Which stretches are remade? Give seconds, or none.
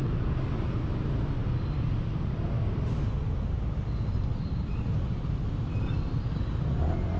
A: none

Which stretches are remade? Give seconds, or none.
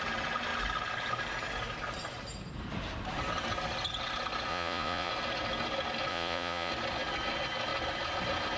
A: 4.5-5.1; 6.1-6.7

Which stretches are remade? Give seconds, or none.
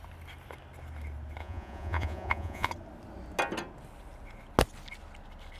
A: 1.4-2.7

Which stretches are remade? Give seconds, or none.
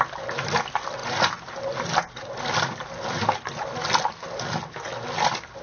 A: none